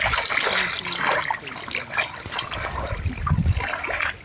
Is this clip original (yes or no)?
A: yes